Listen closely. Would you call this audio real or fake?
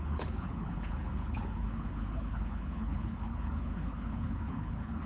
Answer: fake